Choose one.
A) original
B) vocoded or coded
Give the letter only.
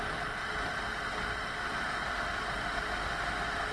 A